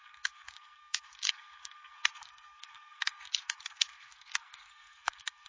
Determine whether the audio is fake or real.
fake